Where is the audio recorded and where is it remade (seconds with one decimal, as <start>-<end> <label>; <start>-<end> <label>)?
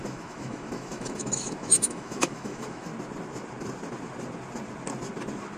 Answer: 0.0-2.9 remade; 2.9-5.6 recorded